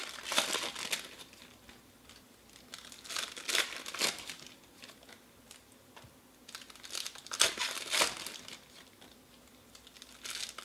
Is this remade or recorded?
recorded